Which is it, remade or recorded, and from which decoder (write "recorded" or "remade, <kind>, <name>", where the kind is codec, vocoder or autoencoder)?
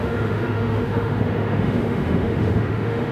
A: remade, autoencoder, DAC-VAE